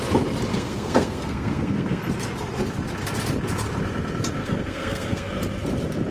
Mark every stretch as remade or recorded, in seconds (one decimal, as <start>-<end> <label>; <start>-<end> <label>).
0.0-0.5 recorded; 0.5-2.0 remade; 2.0-4.4 recorded; 4.4-5.3 remade; 5.3-6.1 recorded